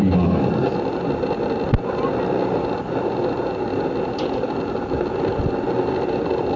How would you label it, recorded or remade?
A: recorded